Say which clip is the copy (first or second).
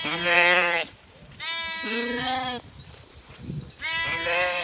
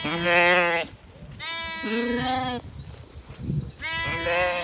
first